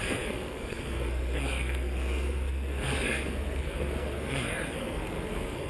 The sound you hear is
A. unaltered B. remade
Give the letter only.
B